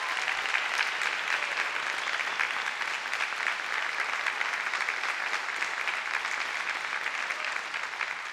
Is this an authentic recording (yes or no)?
yes